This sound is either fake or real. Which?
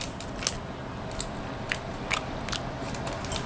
real